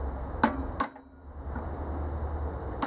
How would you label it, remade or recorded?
recorded